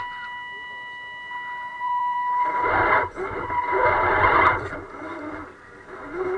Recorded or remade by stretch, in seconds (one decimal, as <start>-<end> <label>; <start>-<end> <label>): 0.0-1.7 recorded; 1.7-4.7 remade; 4.7-6.4 recorded